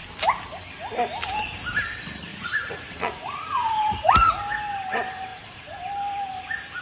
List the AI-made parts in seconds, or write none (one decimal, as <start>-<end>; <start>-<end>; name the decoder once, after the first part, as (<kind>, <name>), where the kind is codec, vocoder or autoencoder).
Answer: 2.3-4.3 (vocoder, Vocos); 5.3-5.8